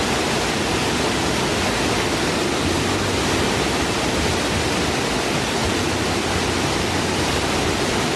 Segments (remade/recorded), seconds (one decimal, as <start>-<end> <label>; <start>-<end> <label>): 0.0-8.2 recorded

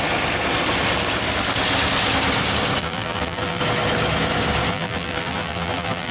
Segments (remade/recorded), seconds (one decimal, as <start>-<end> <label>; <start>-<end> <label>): 0.0-2.8 recorded; 2.8-3.6 remade; 3.6-4.7 recorded; 4.7-6.1 remade

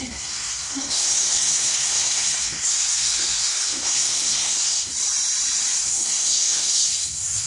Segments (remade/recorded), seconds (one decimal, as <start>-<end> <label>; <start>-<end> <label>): 0.0-4.9 remade; 4.9-5.8 recorded; 5.8-7.5 remade

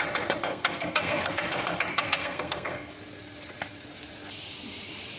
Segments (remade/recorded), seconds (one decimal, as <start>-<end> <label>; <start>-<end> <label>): 0.0-0.5 recorded; 0.5-1.3 remade; 1.3-1.9 recorded; 1.9-2.9 remade; 2.9-5.2 recorded